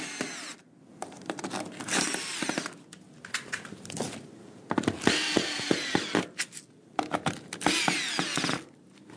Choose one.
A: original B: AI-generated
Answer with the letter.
A